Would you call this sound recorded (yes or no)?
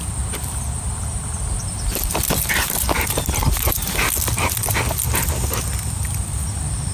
yes